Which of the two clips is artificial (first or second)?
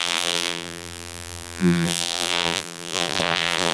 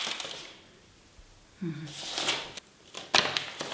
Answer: first